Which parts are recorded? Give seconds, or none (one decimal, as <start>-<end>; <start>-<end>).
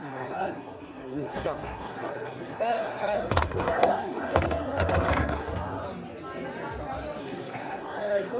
5.8-7.2